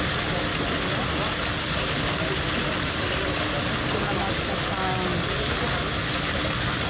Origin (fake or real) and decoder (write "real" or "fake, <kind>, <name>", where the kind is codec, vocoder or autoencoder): real